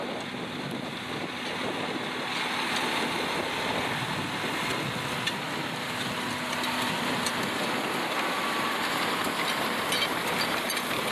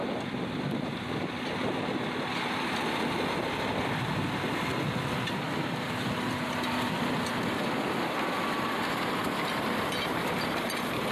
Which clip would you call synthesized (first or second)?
second